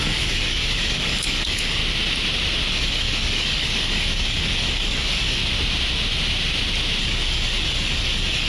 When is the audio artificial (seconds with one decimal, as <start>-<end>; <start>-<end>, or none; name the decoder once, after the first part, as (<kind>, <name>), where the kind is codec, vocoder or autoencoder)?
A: 0.0-1.8 (codec, DAC); 2.7-5.4; 7.0-8.5